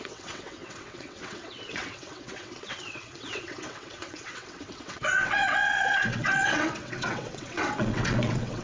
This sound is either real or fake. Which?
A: fake